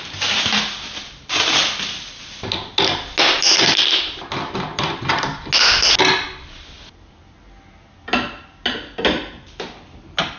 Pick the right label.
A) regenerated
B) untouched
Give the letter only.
B